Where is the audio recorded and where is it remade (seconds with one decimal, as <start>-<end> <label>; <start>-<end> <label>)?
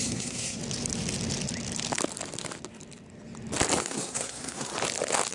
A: 0.0-0.6 remade; 0.6-3.8 recorded; 3.8-4.7 remade; 4.7-5.3 recorded